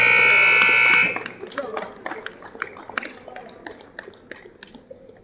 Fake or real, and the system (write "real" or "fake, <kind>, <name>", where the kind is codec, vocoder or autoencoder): real